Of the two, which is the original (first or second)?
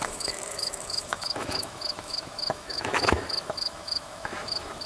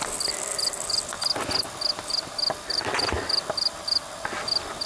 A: second